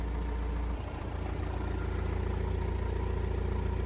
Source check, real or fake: real